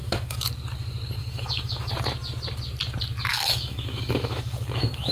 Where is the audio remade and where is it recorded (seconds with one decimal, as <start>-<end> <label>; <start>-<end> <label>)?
0.0-0.5 remade; 0.5-1.2 recorded; 1.2-1.9 remade; 1.9-3.3 recorded; 3.3-5.1 remade